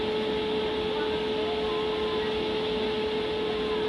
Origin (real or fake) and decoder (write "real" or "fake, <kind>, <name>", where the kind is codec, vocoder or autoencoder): real